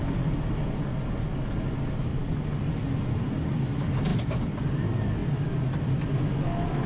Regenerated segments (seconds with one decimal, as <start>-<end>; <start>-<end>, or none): 2.1-2.7; 4.1-4.6; 5.2-6.0